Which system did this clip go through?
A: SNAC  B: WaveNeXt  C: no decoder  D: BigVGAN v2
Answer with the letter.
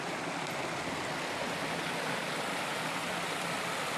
C